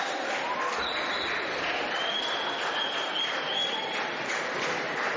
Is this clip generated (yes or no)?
no